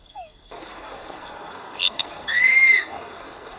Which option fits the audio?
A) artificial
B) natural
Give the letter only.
A